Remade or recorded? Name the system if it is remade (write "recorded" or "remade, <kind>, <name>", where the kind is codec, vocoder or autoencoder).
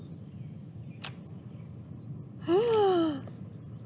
recorded